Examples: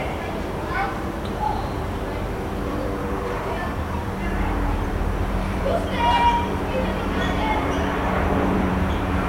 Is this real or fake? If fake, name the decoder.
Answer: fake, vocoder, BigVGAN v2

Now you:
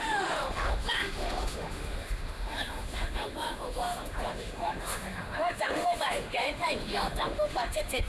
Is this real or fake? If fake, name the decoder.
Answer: fake, autoencoder, DAC-VAE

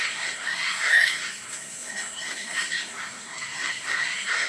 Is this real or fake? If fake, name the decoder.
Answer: fake, codec, SNAC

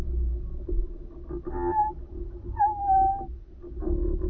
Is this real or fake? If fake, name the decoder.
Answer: real